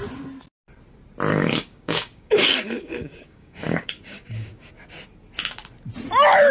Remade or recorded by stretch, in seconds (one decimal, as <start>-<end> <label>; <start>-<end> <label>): 0.0-1.3 recorded; 1.3-4.7 remade; 4.7-6.5 recorded